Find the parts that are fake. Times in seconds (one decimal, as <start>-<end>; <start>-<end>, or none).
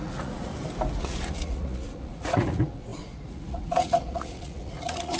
0.0-0.5; 1.0-5.2